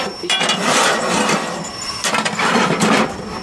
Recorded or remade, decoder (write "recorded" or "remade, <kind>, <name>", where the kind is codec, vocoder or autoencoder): remade, vocoder, BigVGAN v2